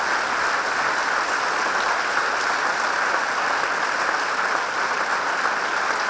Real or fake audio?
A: real